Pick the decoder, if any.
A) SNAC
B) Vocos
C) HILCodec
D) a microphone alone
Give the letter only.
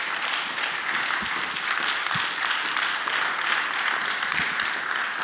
D